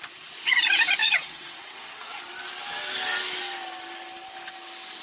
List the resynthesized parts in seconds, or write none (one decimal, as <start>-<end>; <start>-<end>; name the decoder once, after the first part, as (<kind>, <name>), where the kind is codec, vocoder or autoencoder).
1.0-2.2 (vocoder, WaveNeXt)